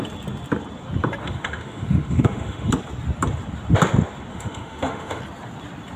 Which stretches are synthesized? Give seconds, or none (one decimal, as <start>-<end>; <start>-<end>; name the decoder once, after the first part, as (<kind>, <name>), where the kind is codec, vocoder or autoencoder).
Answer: 1.2-2.7 (autoencoder, DAC-VAE); 4.3-5.2